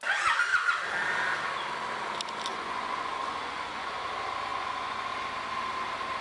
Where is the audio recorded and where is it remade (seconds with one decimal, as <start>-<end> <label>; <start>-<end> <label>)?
0.0-2.5 recorded; 2.5-4.0 remade; 4.0-4.5 recorded; 4.5-5.1 remade; 5.1-6.2 recorded